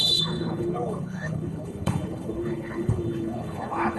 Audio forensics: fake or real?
fake